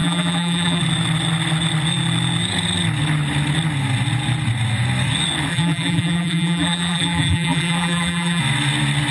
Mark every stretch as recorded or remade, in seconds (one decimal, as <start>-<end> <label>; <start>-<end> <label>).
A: 0.0-0.8 remade; 0.8-5.5 recorded; 5.5-8.4 remade; 8.4-9.1 recorded